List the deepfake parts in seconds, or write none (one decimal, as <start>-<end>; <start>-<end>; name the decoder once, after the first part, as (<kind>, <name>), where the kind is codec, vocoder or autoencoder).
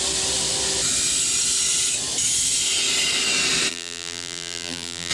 3.7-5.1 (vocoder, BigVGAN v2)